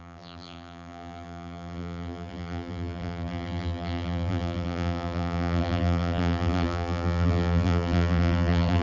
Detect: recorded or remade remade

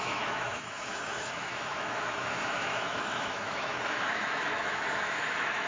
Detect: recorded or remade remade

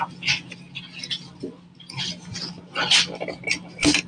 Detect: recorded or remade recorded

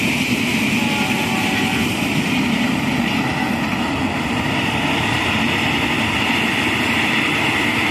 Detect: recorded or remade recorded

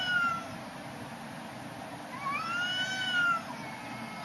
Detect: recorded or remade recorded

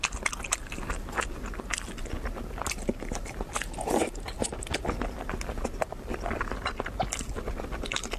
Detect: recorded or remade recorded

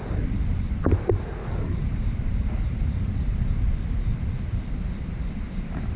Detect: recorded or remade remade